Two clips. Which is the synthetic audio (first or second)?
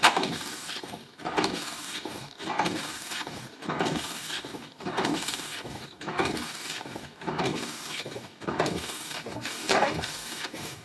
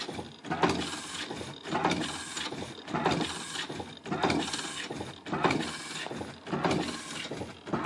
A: first